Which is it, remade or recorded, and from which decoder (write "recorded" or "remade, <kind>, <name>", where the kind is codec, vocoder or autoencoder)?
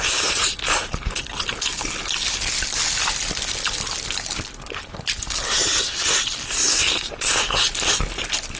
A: recorded